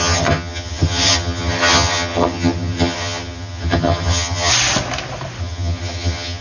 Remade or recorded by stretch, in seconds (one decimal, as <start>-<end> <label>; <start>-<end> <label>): 0.0-4.5 remade; 4.5-5.4 recorded; 5.4-6.4 remade